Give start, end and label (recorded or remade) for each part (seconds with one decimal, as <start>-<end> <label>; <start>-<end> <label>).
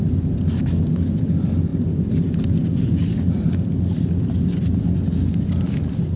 0.0-3.0 recorded; 3.0-4.7 remade; 4.7-6.2 recorded